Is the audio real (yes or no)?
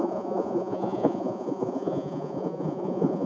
no